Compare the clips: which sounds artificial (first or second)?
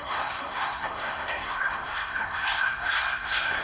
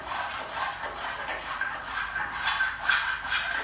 first